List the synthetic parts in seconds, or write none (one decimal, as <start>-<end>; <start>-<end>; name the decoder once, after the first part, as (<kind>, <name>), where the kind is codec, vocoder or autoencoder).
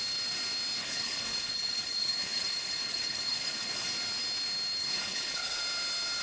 0.8-3.9 (codec, HILCodec); 4.8-5.6